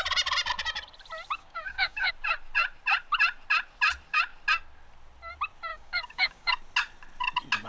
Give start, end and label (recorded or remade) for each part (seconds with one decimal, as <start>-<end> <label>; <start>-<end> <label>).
0.0-1.4 recorded; 1.4-2.1 remade; 2.1-5.7 recorded; 5.7-6.5 remade; 6.5-7.7 recorded